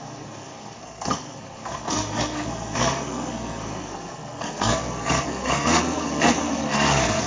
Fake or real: fake